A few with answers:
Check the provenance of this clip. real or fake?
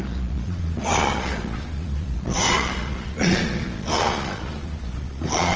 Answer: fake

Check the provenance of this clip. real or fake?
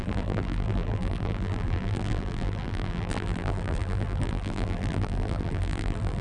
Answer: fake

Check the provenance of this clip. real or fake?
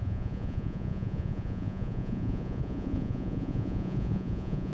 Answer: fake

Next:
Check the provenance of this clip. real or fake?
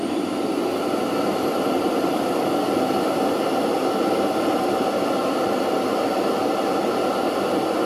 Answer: real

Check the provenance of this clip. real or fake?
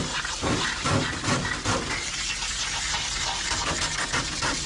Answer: real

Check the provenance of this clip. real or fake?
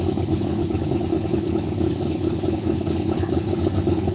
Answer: fake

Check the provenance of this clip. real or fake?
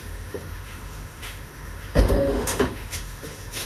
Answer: fake